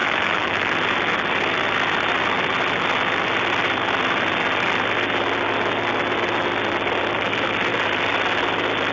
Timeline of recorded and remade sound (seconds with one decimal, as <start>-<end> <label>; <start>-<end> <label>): 0.0-0.7 remade; 0.7-8.9 recorded